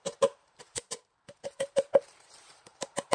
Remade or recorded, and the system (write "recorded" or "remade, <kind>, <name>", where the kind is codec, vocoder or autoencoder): remade, vocoder, BigVGAN v2